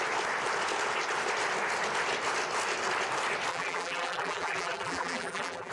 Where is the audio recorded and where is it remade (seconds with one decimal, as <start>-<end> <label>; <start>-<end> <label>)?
0.0-3.5 recorded; 3.5-5.7 remade